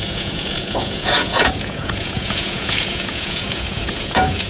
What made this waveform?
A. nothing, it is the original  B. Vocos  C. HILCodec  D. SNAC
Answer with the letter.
B